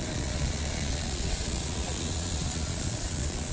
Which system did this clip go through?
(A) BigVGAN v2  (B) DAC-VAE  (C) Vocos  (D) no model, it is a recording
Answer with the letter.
C